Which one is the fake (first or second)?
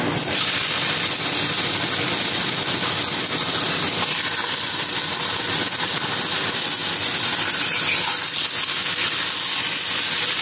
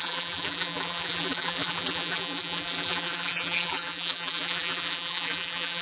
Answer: second